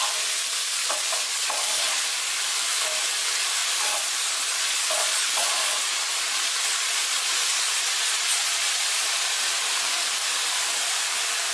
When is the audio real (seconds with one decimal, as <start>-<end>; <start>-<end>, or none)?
0.0-0.8; 2.1-3.6; 8.7-11.5